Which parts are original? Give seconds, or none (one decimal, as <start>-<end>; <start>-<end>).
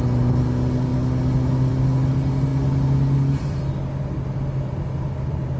0.0-5.6